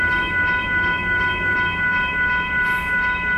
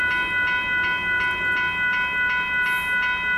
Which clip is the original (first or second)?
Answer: second